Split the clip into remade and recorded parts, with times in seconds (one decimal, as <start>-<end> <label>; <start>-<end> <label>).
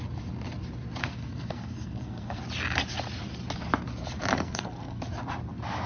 0.0-1.0 recorded; 1.0-2.4 remade; 2.4-4.3 recorded; 4.3-5.0 remade; 5.0-5.9 recorded